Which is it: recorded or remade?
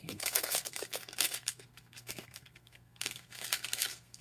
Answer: remade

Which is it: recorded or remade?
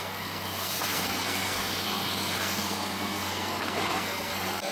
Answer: remade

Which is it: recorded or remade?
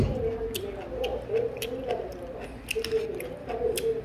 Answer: recorded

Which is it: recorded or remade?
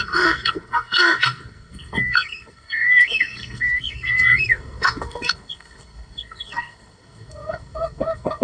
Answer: remade